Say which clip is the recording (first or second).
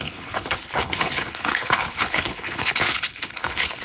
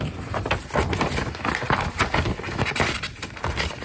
second